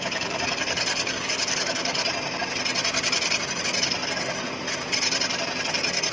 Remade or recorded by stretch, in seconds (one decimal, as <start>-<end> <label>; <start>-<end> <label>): 0.0-2.0 remade; 2.0-6.1 recorded